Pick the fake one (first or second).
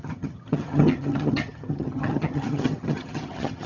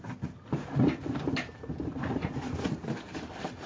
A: first